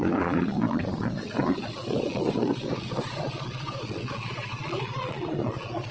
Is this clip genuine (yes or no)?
no